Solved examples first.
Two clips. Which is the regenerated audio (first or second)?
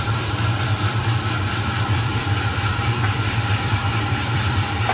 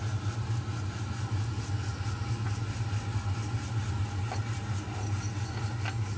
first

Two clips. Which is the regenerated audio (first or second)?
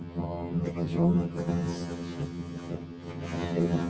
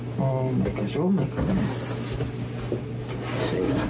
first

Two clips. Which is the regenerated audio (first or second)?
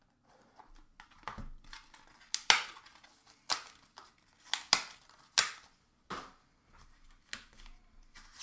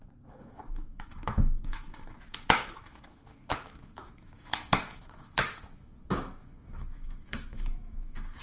second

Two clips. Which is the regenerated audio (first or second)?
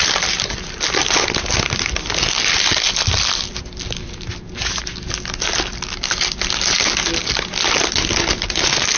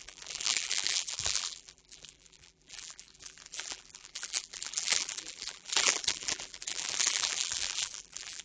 second